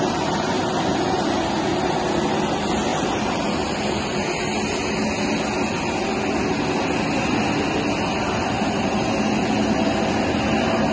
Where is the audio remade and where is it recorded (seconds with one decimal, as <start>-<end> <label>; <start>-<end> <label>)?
0.0-2.9 recorded; 2.9-3.5 remade; 3.5-10.9 recorded